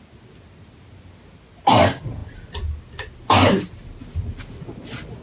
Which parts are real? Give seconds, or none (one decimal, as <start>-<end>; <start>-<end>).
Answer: 0.0-5.2